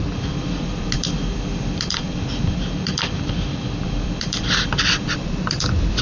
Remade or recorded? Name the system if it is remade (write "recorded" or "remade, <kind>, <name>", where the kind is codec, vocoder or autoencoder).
remade, vocoder, BigVGAN v2